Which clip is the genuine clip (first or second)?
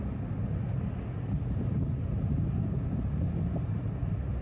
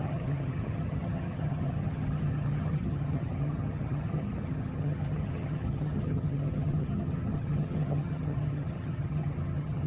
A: first